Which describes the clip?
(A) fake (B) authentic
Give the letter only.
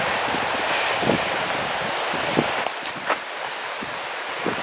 B